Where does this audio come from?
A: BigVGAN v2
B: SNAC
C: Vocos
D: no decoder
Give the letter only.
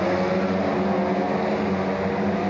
D